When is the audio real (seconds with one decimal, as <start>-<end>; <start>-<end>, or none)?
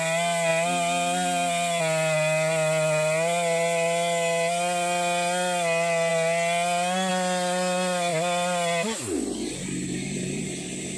0.0-11.0